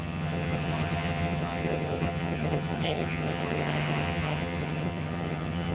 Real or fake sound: fake